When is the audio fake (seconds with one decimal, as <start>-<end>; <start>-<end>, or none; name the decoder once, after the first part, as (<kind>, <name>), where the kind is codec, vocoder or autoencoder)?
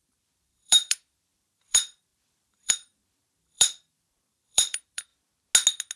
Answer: 0.0-5.1 (vocoder, BigVGAN v2)